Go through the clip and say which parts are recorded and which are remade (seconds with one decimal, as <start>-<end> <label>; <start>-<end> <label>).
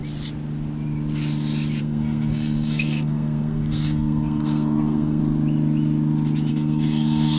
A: 0.0-1.8 recorded; 1.8-5.2 remade; 5.2-6.5 recorded; 6.5-7.4 remade